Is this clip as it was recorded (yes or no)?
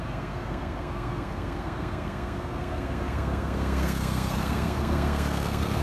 no